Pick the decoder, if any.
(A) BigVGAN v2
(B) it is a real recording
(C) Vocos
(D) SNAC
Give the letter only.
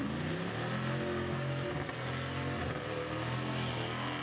B